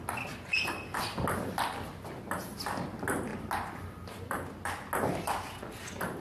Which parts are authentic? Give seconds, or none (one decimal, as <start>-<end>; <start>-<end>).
0.0-6.2